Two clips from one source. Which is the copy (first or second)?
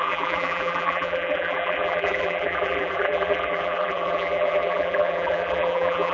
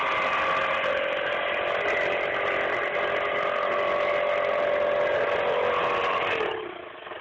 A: first